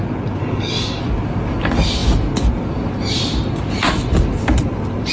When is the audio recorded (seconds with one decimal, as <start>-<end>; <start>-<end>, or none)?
0.0-0.4; 1.0-5.1